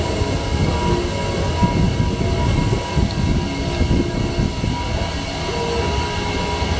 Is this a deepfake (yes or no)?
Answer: no